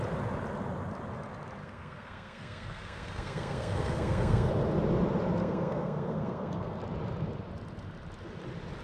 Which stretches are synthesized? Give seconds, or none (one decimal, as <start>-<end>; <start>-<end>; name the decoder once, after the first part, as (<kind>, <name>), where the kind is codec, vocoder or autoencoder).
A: 1.6-4.5 (codec, SNAC); 5.4-6.8